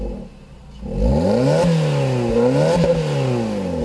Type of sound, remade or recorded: recorded